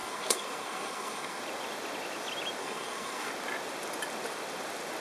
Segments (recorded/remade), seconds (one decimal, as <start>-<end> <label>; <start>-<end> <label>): 0.0-1.4 remade; 1.4-2.6 recorded; 2.6-3.3 remade; 3.3-5.0 recorded